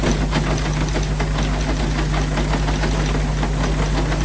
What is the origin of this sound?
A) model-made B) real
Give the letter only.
B